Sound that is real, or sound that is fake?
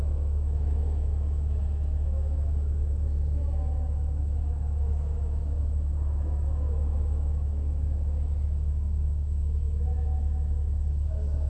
fake